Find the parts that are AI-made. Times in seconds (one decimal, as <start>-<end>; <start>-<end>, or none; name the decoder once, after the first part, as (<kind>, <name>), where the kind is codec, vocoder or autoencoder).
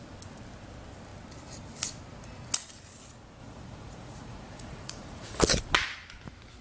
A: 3.4-5.4 (vocoder, Vocos)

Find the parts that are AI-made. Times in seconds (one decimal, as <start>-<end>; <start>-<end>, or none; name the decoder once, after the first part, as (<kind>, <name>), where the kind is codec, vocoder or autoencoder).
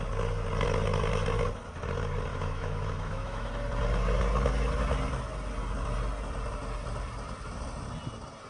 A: 2.3-3.5 (autoencoder, DAC-VAE)